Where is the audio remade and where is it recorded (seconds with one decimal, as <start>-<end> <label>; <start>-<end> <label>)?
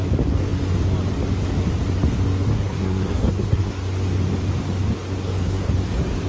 0.0-2.5 recorded; 2.5-3.7 remade; 3.7-5.2 recorded; 5.2-5.7 remade; 5.7-6.3 recorded